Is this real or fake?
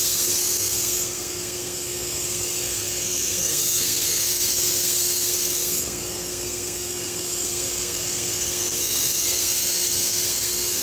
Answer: fake